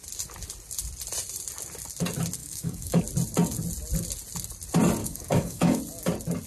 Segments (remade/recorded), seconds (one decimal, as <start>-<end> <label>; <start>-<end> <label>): 0.0-2.4 recorded; 2.4-3.0 remade; 3.0-5.0 recorded; 5.0-5.8 remade; 5.8-6.5 recorded

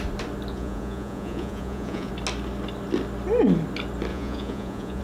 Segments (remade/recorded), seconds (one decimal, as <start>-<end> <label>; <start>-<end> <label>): 0.0-0.5 recorded; 0.5-2.1 remade; 2.1-4.1 recorded; 4.1-5.0 remade

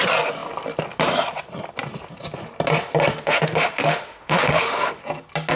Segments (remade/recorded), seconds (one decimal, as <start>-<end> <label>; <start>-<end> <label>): 0.0-3.1 recorded; 3.1-5.0 remade; 5.0-5.6 recorded

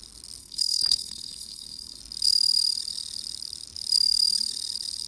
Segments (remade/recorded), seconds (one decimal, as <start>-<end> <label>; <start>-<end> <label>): 0.0-0.4 recorded; 0.4-2.0 remade; 2.0-5.1 recorded

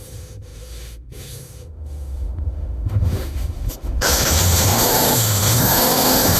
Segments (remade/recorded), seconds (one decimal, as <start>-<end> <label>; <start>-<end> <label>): 0.0-6.4 remade